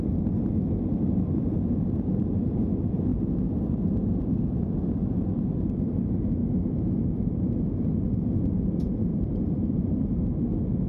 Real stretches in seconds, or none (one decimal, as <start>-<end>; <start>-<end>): 0.0-9.1; 10.0-10.9